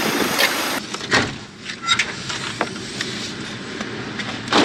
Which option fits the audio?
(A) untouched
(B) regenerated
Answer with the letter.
A